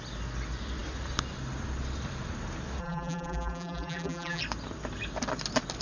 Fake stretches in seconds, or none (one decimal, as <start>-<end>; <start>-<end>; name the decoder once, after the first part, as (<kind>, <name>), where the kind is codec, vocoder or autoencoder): 2.8-4.4 (vocoder, BigVGAN v2)